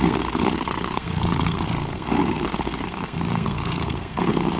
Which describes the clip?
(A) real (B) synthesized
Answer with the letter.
B